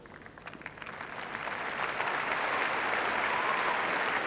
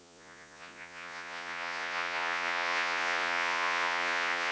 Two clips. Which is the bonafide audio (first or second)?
first